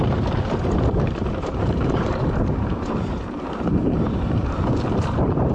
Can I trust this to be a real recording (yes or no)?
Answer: no